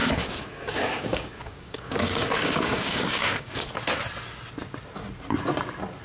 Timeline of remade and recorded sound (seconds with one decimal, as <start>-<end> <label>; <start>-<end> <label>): 0.0-3.6 remade; 3.6-6.0 recorded

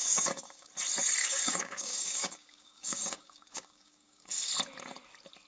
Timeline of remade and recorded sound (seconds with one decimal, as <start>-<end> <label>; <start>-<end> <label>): 0.0-0.7 remade; 0.7-1.2 recorded; 1.2-4.5 remade; 4.5-5.5 recorded

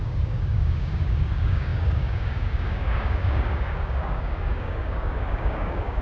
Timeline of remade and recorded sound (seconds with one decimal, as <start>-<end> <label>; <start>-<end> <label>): 0.0-6.0 remade

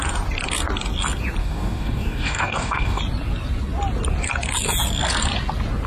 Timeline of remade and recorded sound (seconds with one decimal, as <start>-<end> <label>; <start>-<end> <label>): 0.0-1.4 recorded; 1.4-3.0 remade; 3.0-5.9 recorded

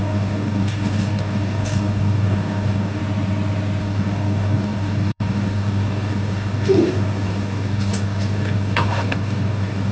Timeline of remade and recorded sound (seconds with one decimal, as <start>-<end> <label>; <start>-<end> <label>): 0.0-3.0 remade; 3.0-3.8 recorded; 3.8-9.9 remade